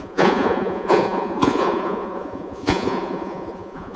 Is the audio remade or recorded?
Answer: remade